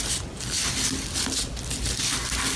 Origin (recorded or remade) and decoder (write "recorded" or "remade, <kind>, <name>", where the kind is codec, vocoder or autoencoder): recorded